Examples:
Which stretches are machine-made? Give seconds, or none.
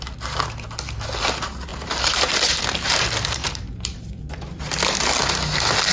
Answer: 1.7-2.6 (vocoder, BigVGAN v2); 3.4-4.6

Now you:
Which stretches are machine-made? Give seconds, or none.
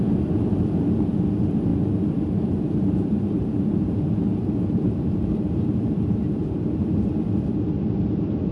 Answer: 1.7-6.8 (vocoder, BigVGAN v2)